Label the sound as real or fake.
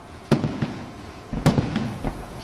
fake